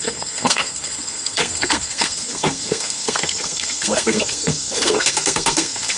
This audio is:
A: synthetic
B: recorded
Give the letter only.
A